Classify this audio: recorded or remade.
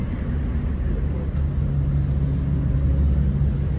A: recorded